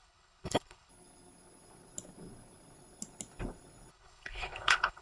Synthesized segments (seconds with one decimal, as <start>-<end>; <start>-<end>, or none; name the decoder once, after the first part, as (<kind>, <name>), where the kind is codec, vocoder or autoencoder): 0.0-0.9 (codec, HILCodec); 3.9-5.0